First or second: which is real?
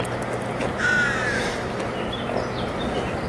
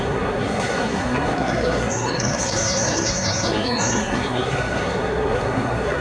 first